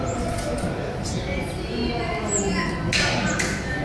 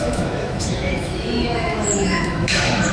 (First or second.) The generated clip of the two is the second